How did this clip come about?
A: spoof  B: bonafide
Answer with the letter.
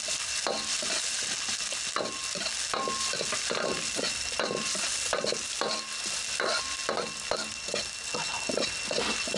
B